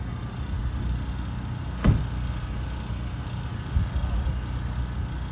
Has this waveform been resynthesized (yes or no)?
no